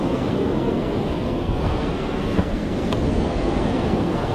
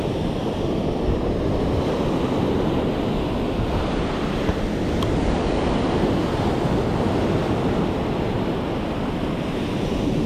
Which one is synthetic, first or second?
first